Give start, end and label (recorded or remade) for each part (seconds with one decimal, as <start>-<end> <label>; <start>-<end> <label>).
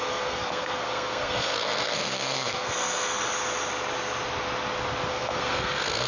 0.0-3.3 remade; 3.3-5.1 recorded; 5.1-6.1 remade